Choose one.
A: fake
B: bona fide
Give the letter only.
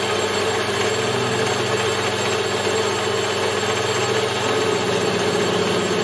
B